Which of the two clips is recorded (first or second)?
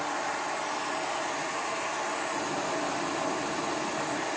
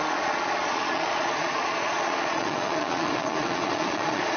first